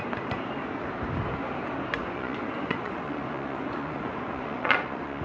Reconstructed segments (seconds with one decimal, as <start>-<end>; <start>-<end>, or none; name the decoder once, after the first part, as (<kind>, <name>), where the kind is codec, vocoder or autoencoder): 2.0-5.2 (vocoder, Vocos)